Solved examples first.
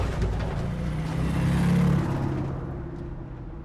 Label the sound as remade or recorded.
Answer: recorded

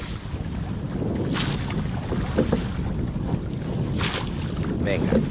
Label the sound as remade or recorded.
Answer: recorded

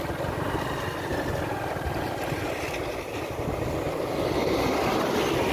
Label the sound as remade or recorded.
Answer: recorded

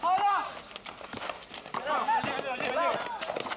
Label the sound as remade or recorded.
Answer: recorded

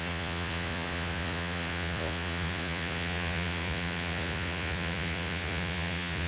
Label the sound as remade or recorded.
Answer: remade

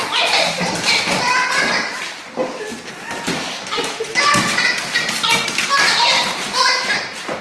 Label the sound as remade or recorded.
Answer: remade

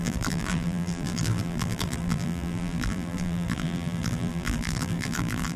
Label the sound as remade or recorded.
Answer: remade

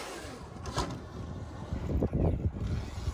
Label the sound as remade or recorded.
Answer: recorded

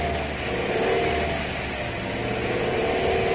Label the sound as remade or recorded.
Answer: recorded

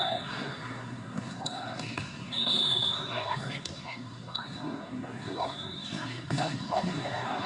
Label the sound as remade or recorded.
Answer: remade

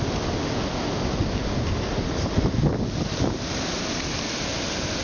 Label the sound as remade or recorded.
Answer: recorded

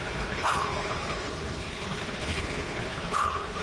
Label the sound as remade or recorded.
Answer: remade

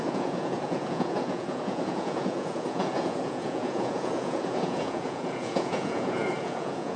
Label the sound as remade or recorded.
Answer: remade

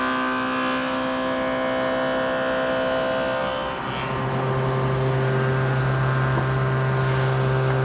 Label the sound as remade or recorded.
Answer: recorded